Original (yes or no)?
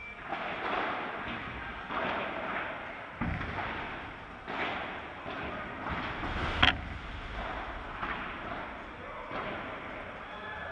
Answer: yes